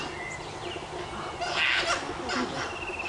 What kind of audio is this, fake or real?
real